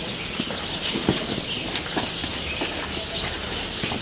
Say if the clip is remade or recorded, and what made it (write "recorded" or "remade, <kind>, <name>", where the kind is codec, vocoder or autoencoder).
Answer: recorded